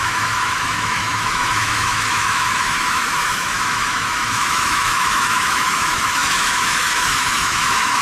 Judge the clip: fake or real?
fake